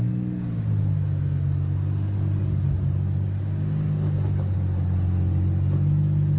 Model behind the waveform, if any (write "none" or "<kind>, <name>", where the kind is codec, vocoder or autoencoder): none